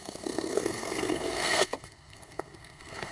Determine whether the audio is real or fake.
fake